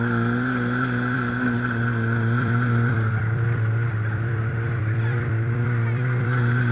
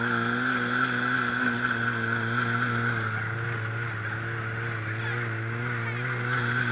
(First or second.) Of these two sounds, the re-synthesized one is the first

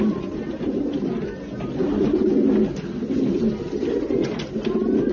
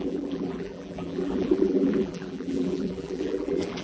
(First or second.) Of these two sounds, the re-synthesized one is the second